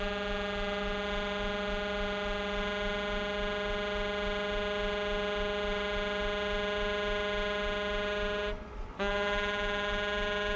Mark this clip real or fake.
real